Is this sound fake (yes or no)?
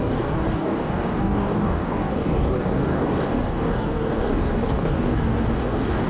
yes